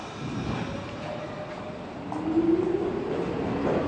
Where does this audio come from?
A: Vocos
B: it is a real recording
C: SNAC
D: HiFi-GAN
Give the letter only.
B